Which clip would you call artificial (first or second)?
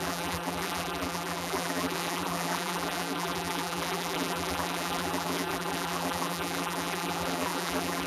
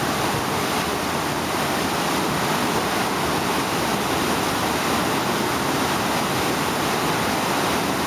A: first